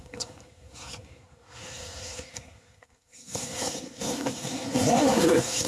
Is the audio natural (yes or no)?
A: no